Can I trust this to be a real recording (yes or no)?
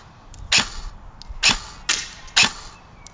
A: yes